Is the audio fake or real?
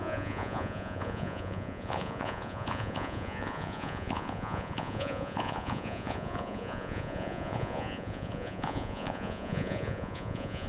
fake